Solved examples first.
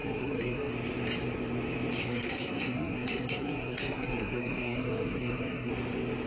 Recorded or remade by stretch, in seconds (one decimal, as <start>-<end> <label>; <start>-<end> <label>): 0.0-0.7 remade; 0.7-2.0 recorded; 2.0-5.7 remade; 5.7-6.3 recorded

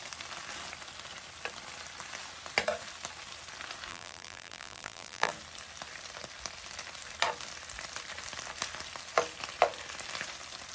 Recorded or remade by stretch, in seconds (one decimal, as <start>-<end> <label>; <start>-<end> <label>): 0.0-3.9 recorded; 3.9-5.3 remade; 5.3-10.7 recorded

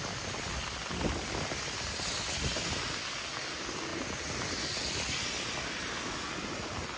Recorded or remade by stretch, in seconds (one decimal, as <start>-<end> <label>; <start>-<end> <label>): 0.0-7.0 recorded

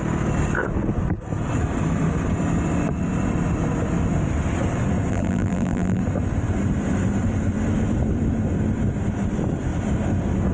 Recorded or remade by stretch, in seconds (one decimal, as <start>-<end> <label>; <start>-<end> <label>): 0.0-5.1 recorded; 5.1-6.0 remade; 6.0-10.5 recorded